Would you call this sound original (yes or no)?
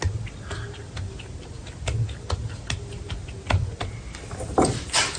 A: yes